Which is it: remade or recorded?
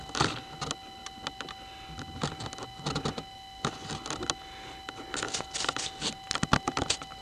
recorded